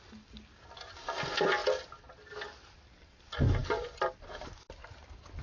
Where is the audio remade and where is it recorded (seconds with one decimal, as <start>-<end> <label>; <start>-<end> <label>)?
0.0-3.6 recorded; 3.6-4.3 remade; 4.3-4.8 recorded; 4.8-5.4 remade